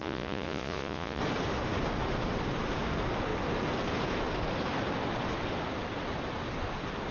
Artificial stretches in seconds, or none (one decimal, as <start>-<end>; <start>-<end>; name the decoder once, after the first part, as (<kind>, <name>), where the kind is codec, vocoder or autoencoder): 0.0-1.2 (vocoder, Vocos)